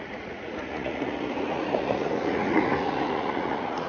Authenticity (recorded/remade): remade